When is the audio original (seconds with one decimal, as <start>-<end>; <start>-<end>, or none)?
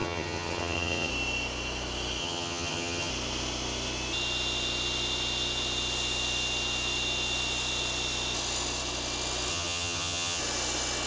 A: 1.1-2.2; 3.1-9.5; 10.4-11.1